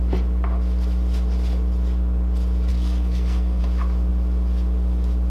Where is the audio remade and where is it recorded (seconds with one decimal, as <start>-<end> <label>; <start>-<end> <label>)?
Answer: 0.0-2.7 recorded; 2.7-3.6 remade; 3.6-5.3 recorded